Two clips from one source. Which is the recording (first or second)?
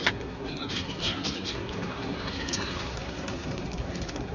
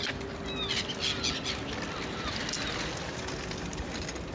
second